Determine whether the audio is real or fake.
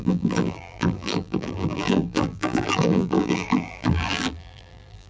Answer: fake